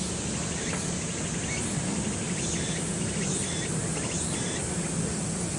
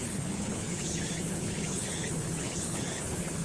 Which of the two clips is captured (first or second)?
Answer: first